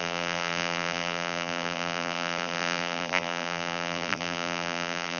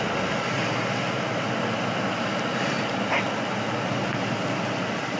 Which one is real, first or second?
second